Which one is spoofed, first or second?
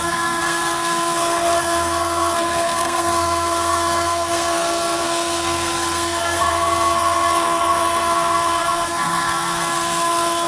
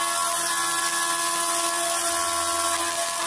first